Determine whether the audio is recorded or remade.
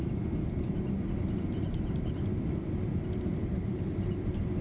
recorded